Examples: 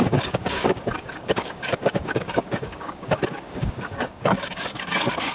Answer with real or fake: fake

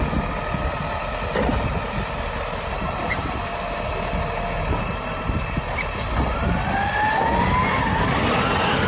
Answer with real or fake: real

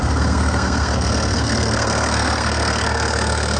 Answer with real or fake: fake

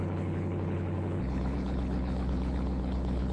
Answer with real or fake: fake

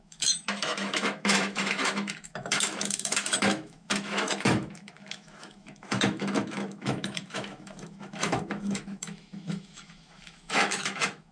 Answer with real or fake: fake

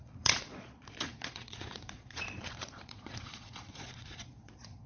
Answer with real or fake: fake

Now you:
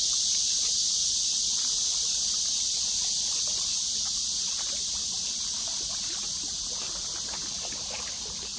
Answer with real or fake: real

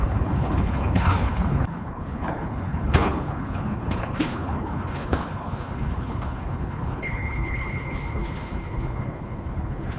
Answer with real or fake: fake